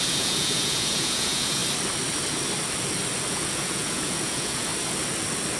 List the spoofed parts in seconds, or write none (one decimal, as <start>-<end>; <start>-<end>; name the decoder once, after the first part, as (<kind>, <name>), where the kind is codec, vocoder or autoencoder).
0.0-1.6 (vocoder, Vocos); 3.3-4.7